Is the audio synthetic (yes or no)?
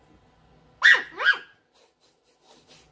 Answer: no